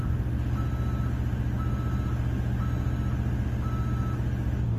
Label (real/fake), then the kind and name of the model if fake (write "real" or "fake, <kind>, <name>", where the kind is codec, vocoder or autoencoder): real